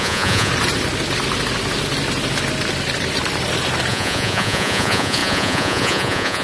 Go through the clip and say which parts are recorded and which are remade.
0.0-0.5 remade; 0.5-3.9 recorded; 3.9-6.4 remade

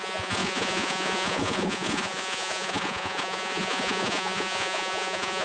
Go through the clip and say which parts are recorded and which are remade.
0.0-5.4 remade

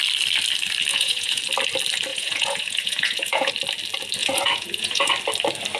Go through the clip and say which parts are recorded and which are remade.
0.0-0.9 recorded; 0.9-1.4 remade; 1.4-2.1 recorded; 2.1-3.5 remade; 3.5-4.2 recorded; 4.2-5.1 remade; 5.1-5.8 recorded

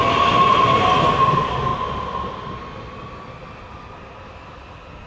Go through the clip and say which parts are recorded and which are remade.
0.0-5.1 recorded